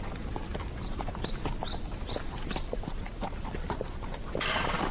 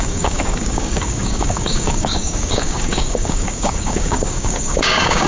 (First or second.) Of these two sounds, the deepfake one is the second